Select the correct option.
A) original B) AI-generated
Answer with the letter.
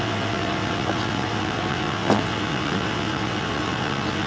B